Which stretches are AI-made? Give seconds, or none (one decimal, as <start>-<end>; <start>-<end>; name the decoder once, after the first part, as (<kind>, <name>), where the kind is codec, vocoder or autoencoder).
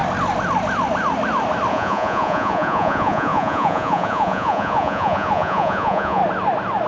1.7-6.2 (vocoder, Vocos)